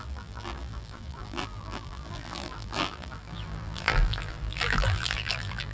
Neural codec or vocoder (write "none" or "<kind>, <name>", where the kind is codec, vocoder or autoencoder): vocoder, BigVGAN v2